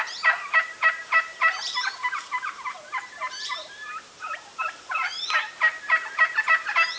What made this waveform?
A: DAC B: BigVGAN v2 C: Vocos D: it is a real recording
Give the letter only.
B